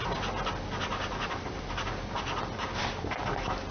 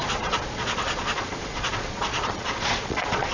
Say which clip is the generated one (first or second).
second